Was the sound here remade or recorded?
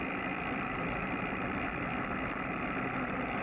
recorded